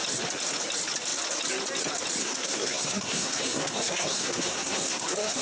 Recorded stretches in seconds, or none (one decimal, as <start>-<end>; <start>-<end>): 0.0-2.2